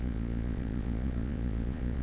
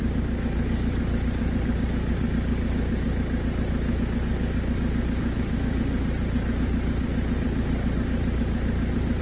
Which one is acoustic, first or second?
second